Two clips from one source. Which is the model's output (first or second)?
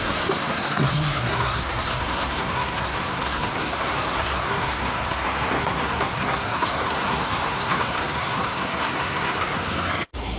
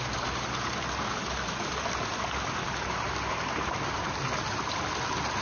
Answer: first